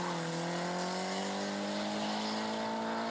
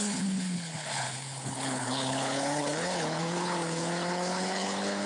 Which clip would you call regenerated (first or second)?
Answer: second